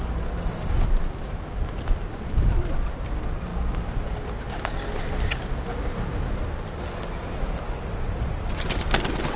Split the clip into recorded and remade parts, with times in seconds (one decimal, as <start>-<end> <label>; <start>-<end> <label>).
0.0-9.4 recorded